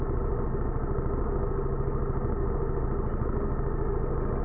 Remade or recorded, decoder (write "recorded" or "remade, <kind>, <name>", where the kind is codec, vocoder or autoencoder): recorded